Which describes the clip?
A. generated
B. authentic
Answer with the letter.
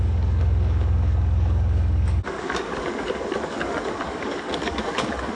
A